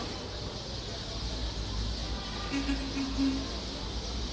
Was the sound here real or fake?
real